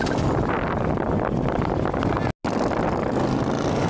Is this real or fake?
real